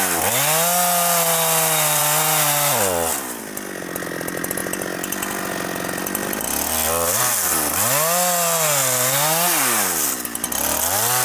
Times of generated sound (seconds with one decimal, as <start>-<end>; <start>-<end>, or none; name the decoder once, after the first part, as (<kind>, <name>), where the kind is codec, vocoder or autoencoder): none